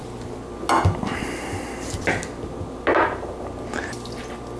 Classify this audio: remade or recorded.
recorded